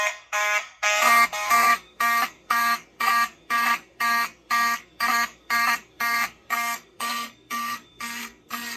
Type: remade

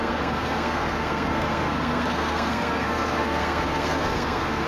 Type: remade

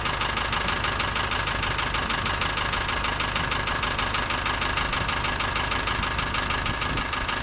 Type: recorded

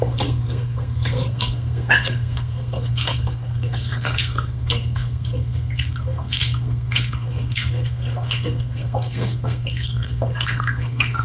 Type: remade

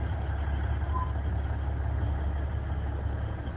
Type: recorded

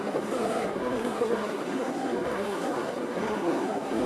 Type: remade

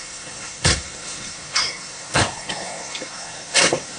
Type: remade